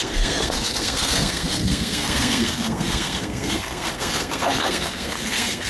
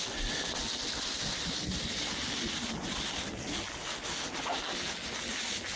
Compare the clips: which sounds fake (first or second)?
first